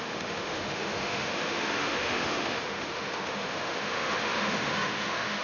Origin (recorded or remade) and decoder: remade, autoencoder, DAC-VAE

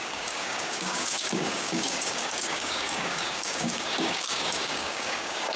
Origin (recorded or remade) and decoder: remade, codec, DAC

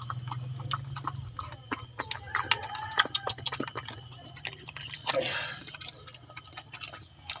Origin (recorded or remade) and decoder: recorded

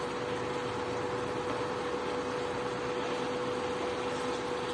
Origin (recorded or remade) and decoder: recorded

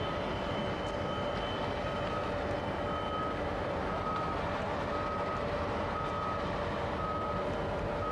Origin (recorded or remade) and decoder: recorded